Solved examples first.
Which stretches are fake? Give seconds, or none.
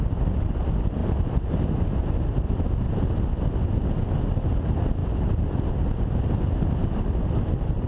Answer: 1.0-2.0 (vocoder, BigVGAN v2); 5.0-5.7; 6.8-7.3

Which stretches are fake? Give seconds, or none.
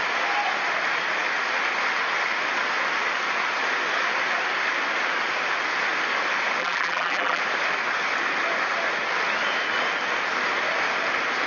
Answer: 6.6-7.4 (vocoder, BigVGAN v2)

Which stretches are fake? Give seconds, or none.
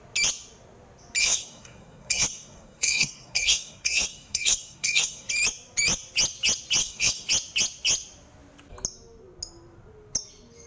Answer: 1.2-5.3 (codec, SNAC); 6.8-7.3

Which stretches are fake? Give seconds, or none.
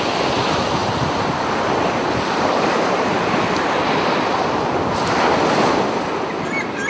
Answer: 0.8-3.7 (vocoder, BigVGAN v2)